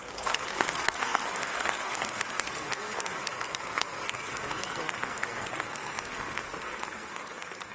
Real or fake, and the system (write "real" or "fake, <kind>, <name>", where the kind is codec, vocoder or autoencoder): fake, codec, SNAC